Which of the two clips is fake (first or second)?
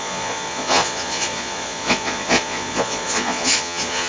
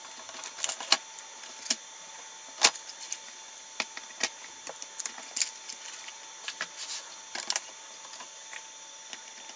first